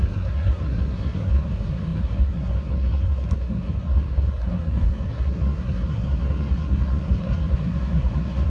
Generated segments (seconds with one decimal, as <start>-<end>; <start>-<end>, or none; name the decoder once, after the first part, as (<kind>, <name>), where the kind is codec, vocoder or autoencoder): 0.0-8.5 (codec, SNAC)